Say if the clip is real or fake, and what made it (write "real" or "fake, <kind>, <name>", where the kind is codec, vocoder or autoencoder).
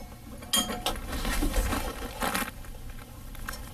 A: real